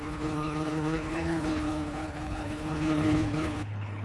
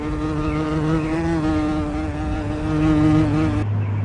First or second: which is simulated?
first